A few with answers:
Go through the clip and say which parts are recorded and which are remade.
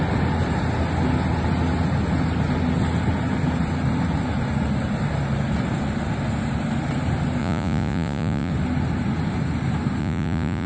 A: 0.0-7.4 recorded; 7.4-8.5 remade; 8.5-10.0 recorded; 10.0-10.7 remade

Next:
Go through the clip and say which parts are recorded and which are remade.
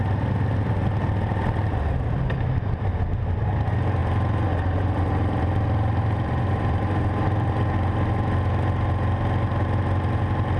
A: 0.0-4.0 recorded; 4.0-7.5 remade; 7.5-10.6 recorded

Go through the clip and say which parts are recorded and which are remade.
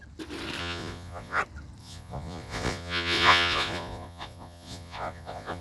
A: 0.0-0.6 recorded; 0.6-1.4 remade; 1.4-1.8 recorded; 1.8-5.6 remade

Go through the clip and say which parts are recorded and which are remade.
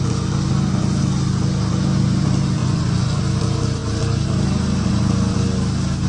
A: 0.0-2.6 recorded; 2.6-3.2 remade; 3.2-6.1 recorded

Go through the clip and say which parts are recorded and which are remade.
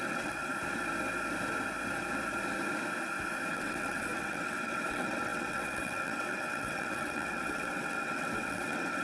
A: 0.0-0.5 remade; 0.5-3.5 recorded; 3.5-9.0 remade